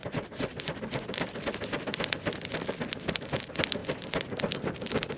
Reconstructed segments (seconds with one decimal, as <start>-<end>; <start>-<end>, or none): none